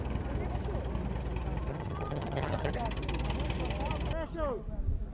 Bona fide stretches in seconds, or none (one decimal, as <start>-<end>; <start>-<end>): 0.0-1.7; 2.7-5.1